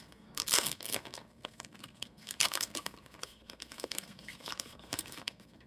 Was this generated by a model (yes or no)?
yes